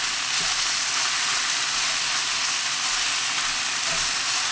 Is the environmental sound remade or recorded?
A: recorded